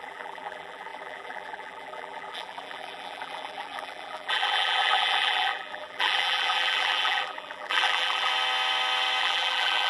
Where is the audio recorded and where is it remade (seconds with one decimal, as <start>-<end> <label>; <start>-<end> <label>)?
0.0-8.3 remade; 8.3-9.2 recorded; 9.2-9.9 remade